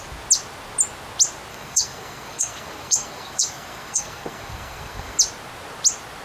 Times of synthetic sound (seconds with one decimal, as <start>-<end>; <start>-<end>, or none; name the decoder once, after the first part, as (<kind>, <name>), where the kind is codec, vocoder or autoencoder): 1.5-5.2 (codec, SNAC)